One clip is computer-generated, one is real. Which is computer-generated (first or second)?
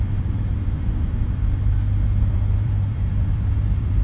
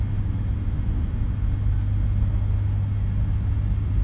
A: first